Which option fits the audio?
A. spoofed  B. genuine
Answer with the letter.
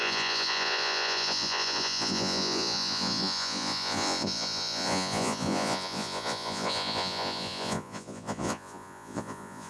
A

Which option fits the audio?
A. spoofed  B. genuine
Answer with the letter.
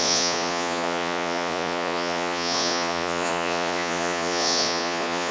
A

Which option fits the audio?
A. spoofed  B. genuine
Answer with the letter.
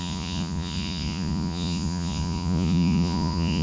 A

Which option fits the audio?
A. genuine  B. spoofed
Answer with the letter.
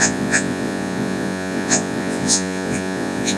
B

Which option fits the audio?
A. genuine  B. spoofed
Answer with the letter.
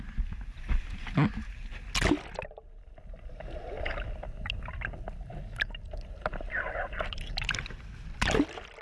A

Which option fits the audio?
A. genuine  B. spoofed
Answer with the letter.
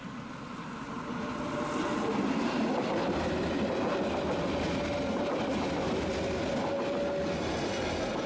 A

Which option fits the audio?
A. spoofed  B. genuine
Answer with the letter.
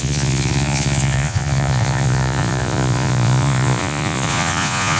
A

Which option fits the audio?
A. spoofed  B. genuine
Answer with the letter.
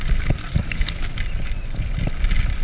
B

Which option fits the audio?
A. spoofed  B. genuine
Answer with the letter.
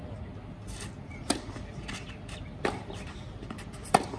B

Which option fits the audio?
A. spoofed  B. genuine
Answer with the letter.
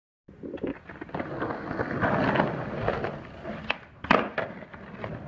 B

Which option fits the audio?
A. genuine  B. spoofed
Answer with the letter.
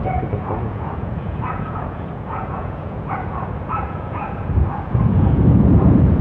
B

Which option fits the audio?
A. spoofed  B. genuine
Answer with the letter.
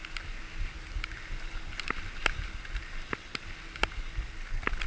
B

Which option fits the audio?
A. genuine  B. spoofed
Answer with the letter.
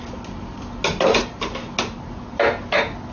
A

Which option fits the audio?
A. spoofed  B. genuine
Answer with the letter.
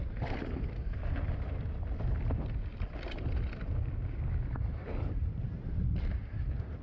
B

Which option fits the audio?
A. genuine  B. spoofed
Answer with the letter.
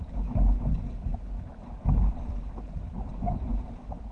A